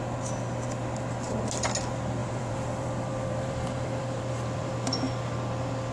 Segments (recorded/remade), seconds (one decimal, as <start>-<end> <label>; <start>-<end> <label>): 0.0-2.2 recorded; 2.2-4.7 remade; 4.7-5.9 recorded